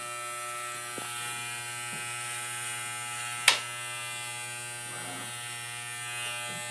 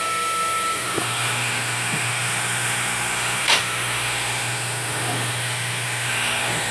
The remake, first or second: second